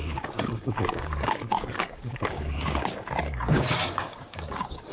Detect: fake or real fake